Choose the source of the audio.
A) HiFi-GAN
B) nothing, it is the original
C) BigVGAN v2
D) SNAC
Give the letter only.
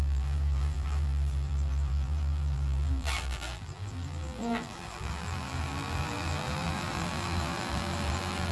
C